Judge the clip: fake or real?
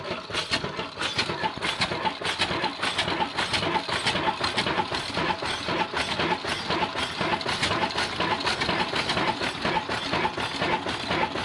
real